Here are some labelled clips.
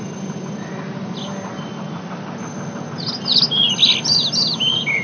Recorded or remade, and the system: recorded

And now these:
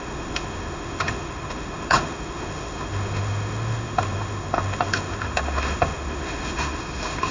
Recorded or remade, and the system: remade, autoencoder, DAC-VAE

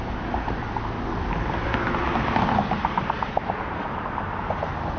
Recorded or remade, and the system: recorded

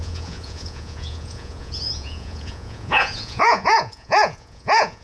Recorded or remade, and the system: remade, vocoder, Vocos